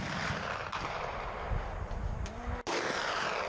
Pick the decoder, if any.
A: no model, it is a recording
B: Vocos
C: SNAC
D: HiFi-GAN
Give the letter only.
A